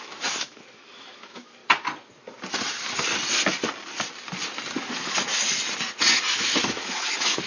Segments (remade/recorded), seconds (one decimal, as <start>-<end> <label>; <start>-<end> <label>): 0.0-1.6 remade; 1.6-4.8 recorded; 4.8-5.3 remade; 5.3-6.2 recorded; 6.2-7.5 remade